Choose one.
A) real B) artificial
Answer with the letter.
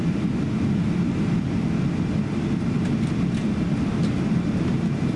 A